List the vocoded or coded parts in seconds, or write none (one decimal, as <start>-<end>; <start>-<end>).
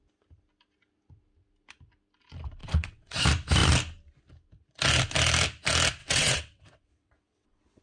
2.6-3.2; 6.0-7.8